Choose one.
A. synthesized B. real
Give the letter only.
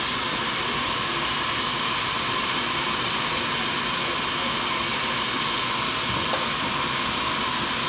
B